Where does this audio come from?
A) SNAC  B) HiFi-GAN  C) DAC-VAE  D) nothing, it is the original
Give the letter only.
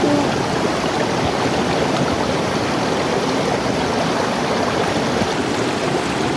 D